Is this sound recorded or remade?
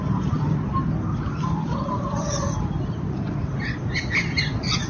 recorded